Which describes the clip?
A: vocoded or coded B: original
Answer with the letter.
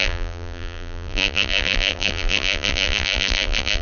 A